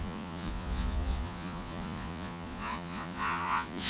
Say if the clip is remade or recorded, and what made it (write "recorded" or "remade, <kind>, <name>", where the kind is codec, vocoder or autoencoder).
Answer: remade, vocoder, Vocos